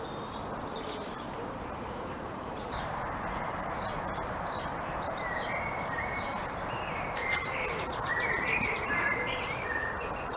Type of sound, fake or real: fake